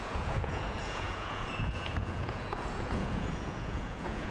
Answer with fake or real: fake